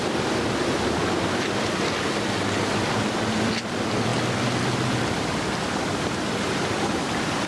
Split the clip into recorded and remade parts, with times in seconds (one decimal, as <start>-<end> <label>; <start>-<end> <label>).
0.0-1.0 remade; 1.0-2.0 recorded; 2.0-4.1 remade; 4.1-5.0 recorded; 5.0-7.5 remade